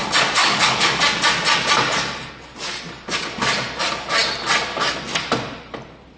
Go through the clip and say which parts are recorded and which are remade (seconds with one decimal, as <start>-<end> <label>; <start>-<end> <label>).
0.0-0.4 recorded; 0.4-1.0 remade; 1.0-6.2 recorded